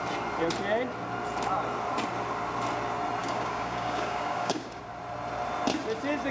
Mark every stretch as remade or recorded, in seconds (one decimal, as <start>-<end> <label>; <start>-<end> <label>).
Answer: 0.0-3.2 recorded; 3.2-4.8 remade; 4.8-6.3 recorded